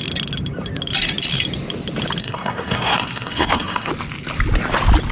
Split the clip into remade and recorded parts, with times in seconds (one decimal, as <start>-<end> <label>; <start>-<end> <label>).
0.0-2.2 recorded; 2.2-3.9 remade; 3.9-5.1 recorded